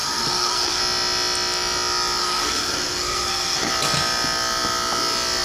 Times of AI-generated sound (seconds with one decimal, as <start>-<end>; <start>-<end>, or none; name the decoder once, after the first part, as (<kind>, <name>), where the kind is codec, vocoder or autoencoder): 0.0-0.8 (codec, SNAC); 2.2-3.7